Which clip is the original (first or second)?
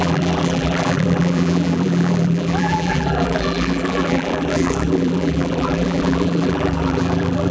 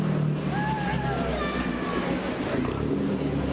second